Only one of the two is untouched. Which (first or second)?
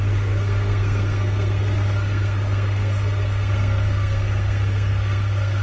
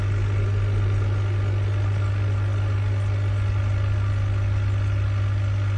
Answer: second